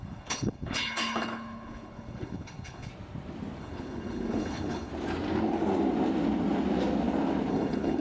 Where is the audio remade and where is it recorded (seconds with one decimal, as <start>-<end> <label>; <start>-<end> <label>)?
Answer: 0.0-2.9 remade; 2.9-3.6 recorded; 3.6-4.9 remade; 4.9-7.5 recorded; 7.5-8.0 remade